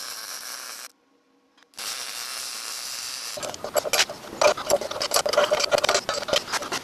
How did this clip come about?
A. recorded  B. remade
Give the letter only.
A